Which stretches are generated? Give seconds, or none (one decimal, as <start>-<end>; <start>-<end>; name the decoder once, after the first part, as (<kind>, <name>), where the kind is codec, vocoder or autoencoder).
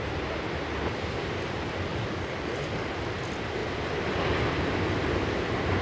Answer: 1.9-2.9 (codec, DAC)